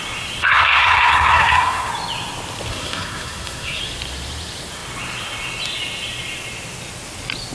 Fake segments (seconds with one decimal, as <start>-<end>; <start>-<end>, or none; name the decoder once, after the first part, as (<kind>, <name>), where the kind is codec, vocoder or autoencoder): 0.4-1.9 (codec, SNAC); 2.7-3.8